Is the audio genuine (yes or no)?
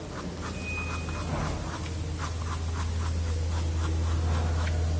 yes